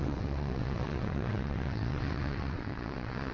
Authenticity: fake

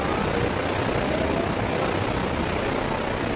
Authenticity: real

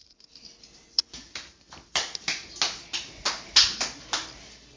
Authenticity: real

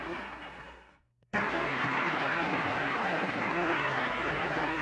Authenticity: fake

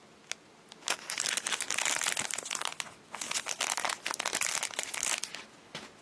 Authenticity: real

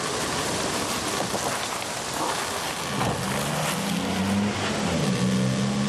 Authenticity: real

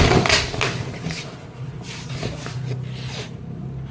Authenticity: real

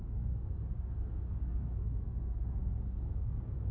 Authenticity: fake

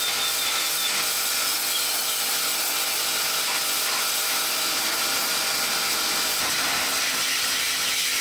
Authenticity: real